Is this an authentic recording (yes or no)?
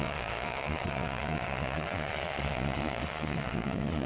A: no